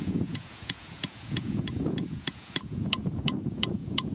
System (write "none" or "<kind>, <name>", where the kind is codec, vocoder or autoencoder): vocoder, Vocos